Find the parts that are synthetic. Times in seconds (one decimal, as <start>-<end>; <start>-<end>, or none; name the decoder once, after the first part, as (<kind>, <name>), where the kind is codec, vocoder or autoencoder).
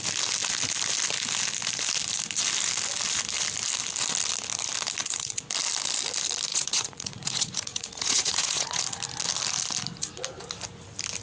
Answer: 5.0-5.5 (vocoder, Vocos); 6.5-8.8